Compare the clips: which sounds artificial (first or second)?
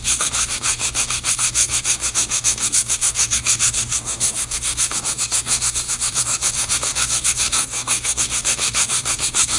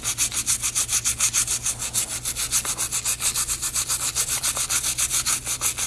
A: first